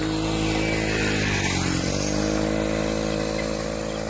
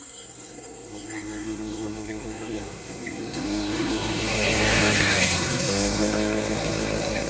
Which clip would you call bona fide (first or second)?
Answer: first